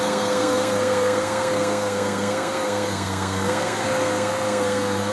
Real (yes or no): no